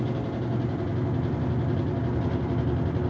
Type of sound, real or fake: real